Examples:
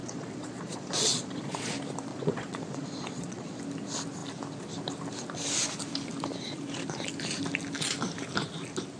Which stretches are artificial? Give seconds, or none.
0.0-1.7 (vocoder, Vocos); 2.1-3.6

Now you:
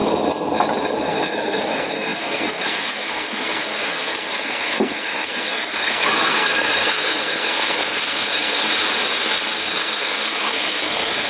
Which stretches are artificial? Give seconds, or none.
1.0-8.6 (codec, SNAC); 9.6-11.3

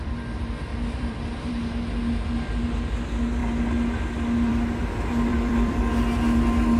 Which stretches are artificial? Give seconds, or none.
0.7-1.5 (vocoder, BigVGAN v2); 5.3-5.8